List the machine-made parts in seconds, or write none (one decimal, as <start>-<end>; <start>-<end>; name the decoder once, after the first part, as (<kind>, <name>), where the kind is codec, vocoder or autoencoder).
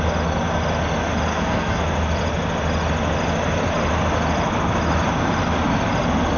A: 1.3-1.8 (codec, SNAC)